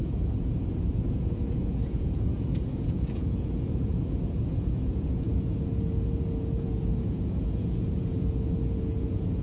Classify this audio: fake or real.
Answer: fake